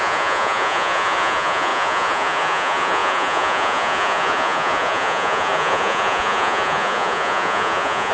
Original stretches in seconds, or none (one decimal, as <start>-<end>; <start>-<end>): none